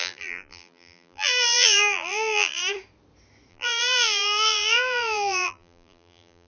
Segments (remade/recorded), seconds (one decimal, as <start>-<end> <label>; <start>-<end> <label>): 0.0-2.6 remade; 2.6-3.5 recorded; 3.5-6.5 remade